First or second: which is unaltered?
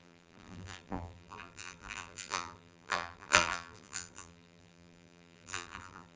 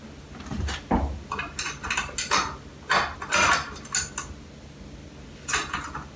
second